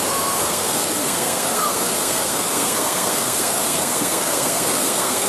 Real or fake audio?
fake